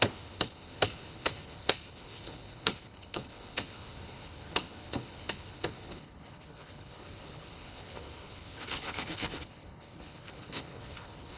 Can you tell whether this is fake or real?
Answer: fake